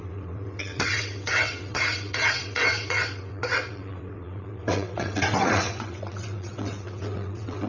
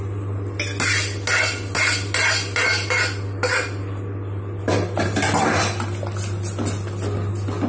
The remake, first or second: first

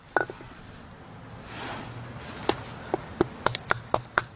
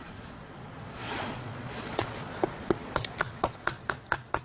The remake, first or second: second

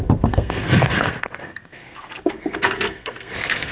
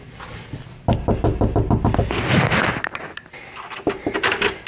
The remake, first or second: first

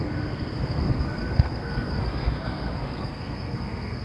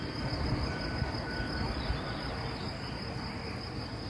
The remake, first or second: first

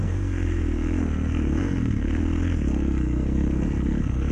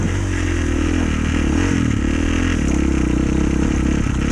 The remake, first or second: first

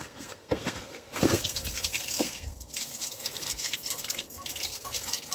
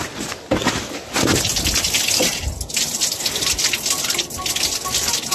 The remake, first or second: first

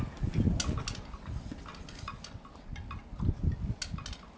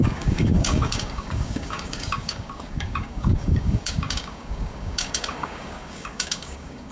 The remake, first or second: second